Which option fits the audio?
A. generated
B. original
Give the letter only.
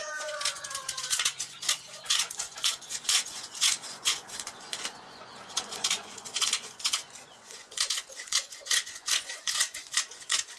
A